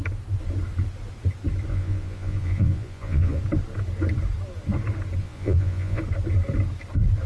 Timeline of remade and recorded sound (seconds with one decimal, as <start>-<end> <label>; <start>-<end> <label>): 0.0-1.7 recorded; 1.7-3.4 remade; 3.4-5.2 recorded; 5.2-6.0 remade; 6.0-7.3 recorded